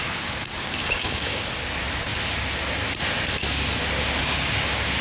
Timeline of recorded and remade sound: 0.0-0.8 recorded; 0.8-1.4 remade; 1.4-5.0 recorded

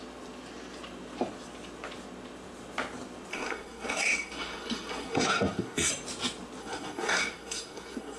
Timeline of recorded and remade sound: 0.0-3.3 recorded; 3.3-5.9 remade; 5.9-6.6 recorded; 6.6-8.2 remade

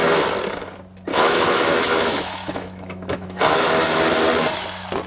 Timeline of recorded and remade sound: 0.0-1.1 recorded; 1.1-3.7 remade; 3.7-5.1 recorded

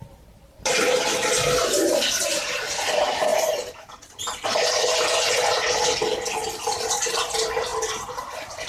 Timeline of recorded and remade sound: 0.0-3.3 remade; 3.3-4.2 recorded; 4.2-6.0 remade; 6.0-6.9 recorded; 6.9-8.7 remade

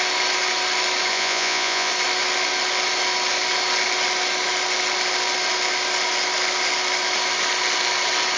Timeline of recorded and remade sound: 0.0-1.1 recorded; 1.1-1.9 remade; 1.9-8.4 recorded

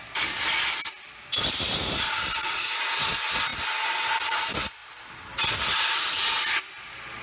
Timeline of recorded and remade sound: 0.0-7.2 recorded